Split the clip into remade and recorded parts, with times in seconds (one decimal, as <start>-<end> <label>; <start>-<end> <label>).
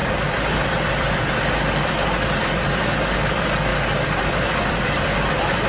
0.0-3.7 remade; 3.7-4.2 recorded; 4.2-5.7 remade